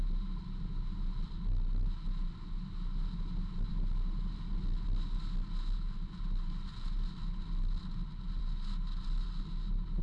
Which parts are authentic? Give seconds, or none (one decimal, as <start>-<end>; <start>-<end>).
0.0-10.0